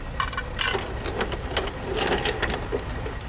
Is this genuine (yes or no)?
yes